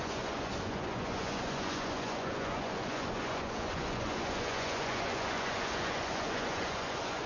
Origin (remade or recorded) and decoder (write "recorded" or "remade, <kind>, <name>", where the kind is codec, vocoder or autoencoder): remade, vocoder, Vocos